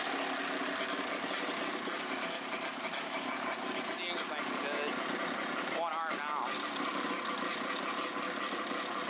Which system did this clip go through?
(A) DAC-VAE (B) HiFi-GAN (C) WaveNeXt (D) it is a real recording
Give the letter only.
D